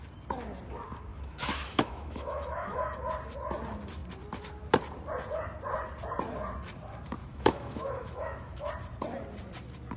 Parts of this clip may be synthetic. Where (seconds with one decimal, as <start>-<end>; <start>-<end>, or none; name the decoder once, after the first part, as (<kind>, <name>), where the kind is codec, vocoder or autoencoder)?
1.1-2.8 (autoencoder, DAC-VAE); 7.2-8.7